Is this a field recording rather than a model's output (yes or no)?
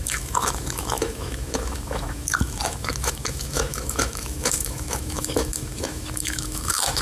no